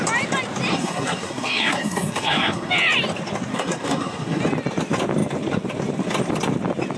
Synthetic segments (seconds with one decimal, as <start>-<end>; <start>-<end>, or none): 0.7-2.7; 3.5-4.4